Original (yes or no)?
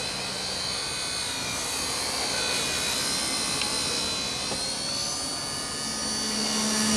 yes